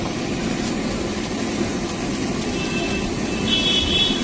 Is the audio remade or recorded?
recorded